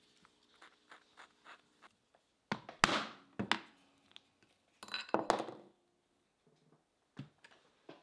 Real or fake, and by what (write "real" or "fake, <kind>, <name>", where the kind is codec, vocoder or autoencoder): real